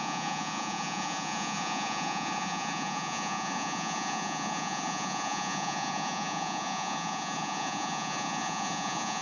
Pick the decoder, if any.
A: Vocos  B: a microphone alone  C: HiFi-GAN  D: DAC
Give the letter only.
A